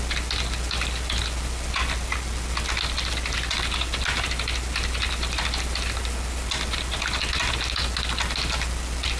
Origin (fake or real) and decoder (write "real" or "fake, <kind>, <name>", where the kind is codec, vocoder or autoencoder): real